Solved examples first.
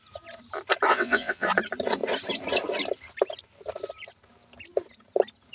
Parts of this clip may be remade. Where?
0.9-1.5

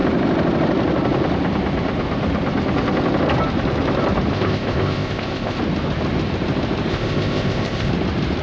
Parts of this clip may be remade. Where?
4.3-5.6; 6.9-7.9

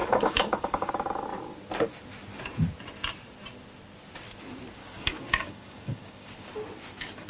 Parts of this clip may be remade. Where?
0.0-0.9; 4.8-6.3